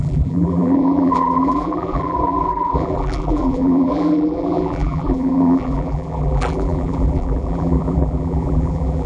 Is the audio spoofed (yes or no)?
yes